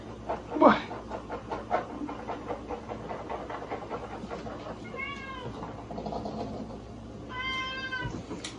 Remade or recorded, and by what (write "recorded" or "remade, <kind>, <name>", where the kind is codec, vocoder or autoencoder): recorded